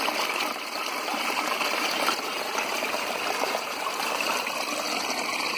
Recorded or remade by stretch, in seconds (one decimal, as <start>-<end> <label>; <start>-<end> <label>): 0.0-1.1 recorded; 1.1-4.3 remade; 4.3-5.6 recorded